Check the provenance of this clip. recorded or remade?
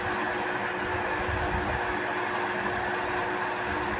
recorded